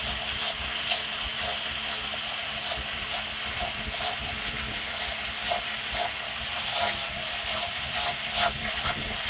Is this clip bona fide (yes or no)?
no